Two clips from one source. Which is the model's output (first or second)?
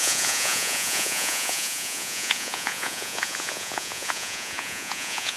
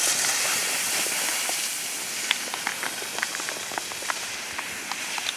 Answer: first